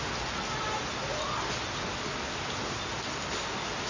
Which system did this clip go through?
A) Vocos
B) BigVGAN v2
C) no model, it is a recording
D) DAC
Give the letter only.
C